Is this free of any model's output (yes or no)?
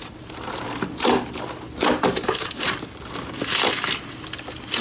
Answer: yes